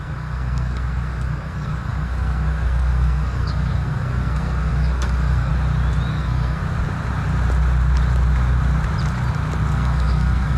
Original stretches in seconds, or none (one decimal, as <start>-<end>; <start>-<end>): 5.5-6.1; 6.6-9.7